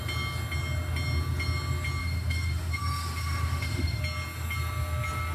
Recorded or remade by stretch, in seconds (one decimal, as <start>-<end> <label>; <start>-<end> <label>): 0.0-2.0 recorded; 2.0-4.0 remade; 4.0-5.3 recorded